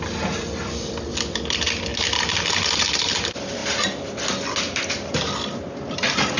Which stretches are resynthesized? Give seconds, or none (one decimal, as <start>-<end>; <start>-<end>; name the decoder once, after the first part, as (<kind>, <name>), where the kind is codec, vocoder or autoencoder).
none